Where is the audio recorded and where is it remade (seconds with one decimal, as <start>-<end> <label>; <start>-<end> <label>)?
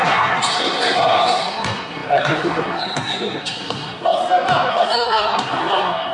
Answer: 0.0-4.2 remade; 4.2-4.7 recorded; 4.7-6.1 remade